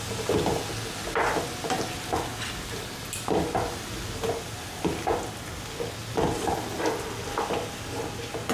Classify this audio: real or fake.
real